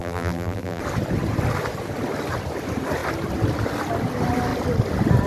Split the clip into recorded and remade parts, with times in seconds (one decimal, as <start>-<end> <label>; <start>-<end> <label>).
0.0-0.8 remade; 0.8-5.3 recorded